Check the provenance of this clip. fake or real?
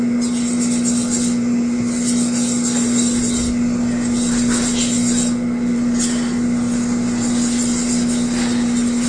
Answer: real